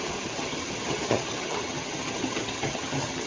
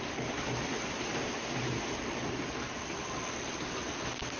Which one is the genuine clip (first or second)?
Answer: second